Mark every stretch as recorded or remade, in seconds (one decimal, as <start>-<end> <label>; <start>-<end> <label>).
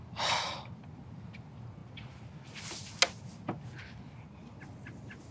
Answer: 0.0-5.3 recorded